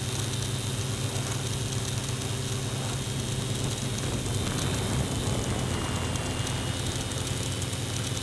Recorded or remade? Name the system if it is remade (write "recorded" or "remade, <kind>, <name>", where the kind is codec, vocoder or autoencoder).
recorded